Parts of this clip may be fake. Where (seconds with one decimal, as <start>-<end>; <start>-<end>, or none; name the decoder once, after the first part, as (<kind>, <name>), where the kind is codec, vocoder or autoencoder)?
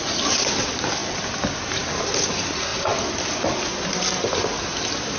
none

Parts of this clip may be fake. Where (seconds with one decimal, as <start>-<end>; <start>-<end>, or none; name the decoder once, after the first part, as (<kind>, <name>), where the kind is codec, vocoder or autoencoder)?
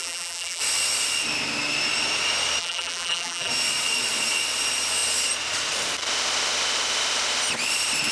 0.0-0.6 (vocoder, BigVGAN v2); 2.6-3.5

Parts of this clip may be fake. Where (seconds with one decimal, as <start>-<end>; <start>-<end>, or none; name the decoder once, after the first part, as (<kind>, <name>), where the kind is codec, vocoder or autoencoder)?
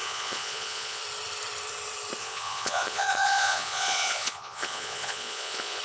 0.0-1.0 (vocoder, Vocos); 2.2-5.8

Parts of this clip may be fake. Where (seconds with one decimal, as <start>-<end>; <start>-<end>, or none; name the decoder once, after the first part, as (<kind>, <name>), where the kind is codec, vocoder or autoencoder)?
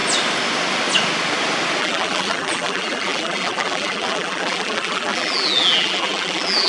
1.8-6.7 (vocoder, BigVGAN v2)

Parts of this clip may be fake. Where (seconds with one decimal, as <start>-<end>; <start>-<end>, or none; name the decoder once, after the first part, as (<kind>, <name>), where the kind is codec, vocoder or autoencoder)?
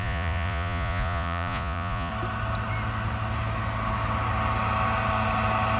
0.0-2.1 (vocoder, Vocos)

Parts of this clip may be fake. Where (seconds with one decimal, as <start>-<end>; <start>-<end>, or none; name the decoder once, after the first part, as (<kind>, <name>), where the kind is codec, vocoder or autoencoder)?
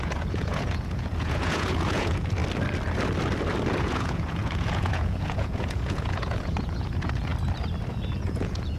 0.0-2.4 (vocoder, Vocos); 3.8-7.3; 7.9-8.8